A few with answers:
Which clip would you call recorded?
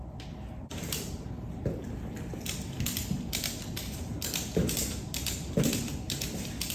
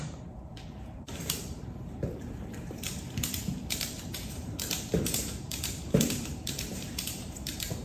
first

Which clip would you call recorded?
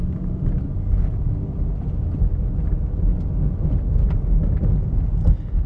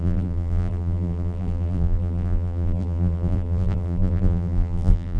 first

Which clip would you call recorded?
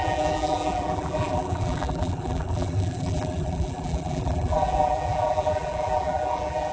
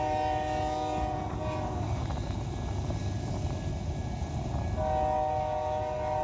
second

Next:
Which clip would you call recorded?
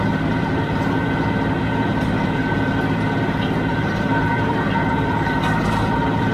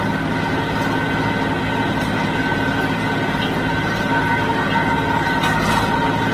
second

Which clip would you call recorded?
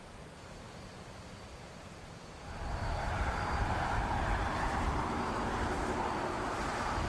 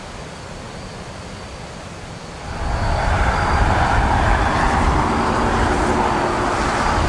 second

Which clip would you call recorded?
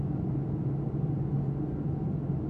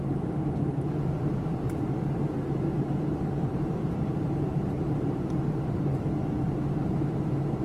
first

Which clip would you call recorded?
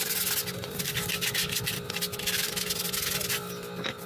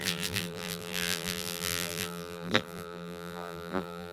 first